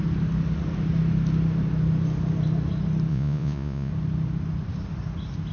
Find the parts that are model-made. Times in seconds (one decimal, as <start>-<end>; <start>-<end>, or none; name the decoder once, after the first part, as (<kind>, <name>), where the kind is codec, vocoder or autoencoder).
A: 3.1-3.9 (vocoder, Vocos)